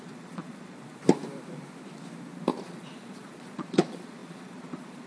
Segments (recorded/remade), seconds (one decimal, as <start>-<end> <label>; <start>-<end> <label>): 0.0-1.0 remade; 1.0-2.6 recorded; 2.6-5.1 remade